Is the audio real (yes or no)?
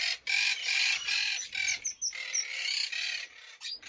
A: yes